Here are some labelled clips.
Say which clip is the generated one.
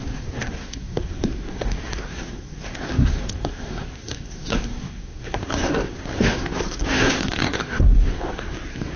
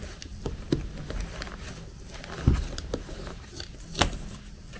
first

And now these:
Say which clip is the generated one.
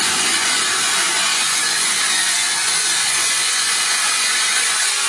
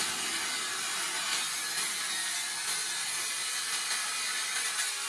first